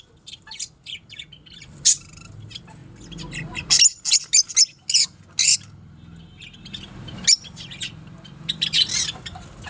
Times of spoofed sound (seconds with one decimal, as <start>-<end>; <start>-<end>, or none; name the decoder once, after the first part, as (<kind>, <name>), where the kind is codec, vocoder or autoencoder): none